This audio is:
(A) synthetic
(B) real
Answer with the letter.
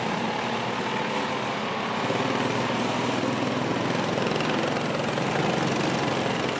B